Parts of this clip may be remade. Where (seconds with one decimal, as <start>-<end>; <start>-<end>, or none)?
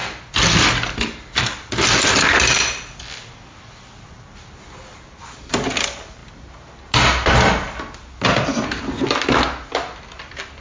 0.6-6.2; 10.1-10.6